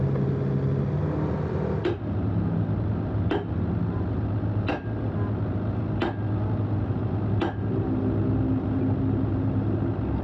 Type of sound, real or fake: real